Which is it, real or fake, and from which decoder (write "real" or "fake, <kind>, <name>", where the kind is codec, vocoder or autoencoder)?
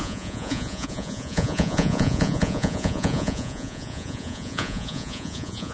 fake, vocoder, Vocos